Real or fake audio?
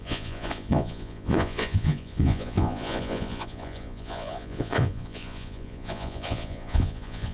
fake